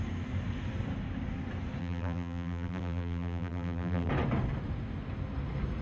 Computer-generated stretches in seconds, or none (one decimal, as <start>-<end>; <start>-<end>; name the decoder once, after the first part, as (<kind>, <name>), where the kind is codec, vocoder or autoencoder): 1.8-4.1 (vocoder, BigVGAN v2)